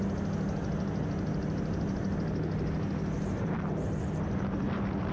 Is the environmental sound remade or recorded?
recorded